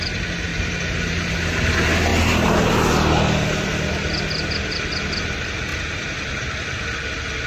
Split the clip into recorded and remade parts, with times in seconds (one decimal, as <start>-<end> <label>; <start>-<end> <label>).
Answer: 0.0-0.5 recorded; 0.5-1.3 remade; 1.3-5.7 recorded; 5.7-6.8 remade; 6.8-7.5 recorded